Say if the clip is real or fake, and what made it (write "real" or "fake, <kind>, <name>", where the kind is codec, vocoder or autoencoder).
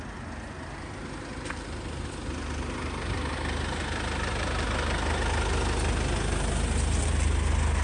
real